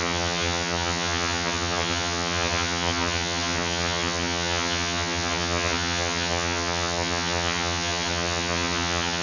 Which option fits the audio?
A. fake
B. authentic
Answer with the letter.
A